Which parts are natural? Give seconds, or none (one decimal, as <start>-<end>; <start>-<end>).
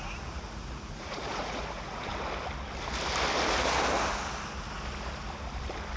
2.1-6.0